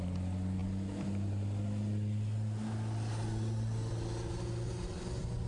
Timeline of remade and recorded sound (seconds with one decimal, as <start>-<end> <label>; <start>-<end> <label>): 0.0-5.5 recorded